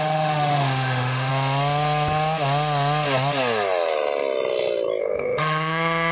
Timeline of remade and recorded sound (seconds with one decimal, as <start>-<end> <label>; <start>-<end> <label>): 0.0-1.3 remade; 1.3-5.0 recorded; 5.0-6.1 remade